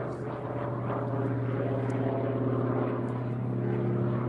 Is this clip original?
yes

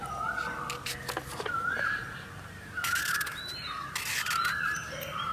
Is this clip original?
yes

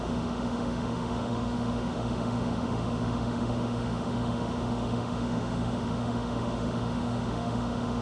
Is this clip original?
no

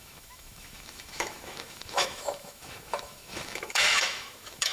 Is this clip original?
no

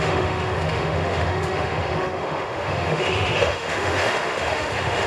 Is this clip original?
no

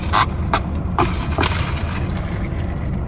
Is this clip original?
yes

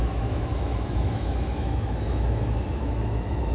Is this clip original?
no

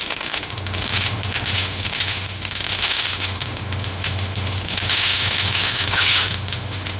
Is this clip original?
no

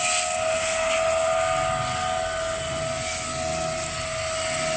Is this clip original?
yes